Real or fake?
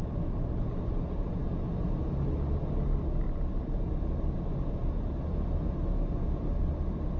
real